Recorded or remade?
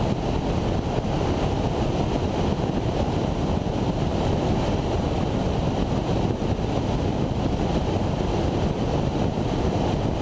recorded